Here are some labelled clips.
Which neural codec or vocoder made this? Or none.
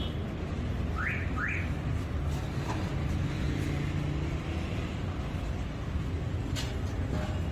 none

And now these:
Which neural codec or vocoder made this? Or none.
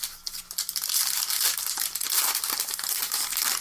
none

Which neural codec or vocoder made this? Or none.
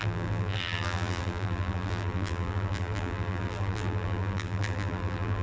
vocoder, BigVGAN v2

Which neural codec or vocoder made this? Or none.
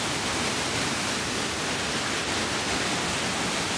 none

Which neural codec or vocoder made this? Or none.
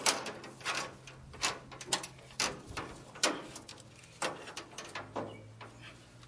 none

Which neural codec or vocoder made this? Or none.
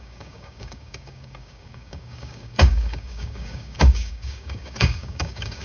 codec, DAC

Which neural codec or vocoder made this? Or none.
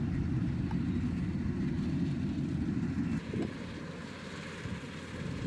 none